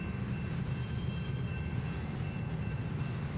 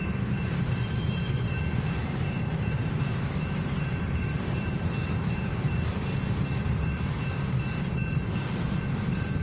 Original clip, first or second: first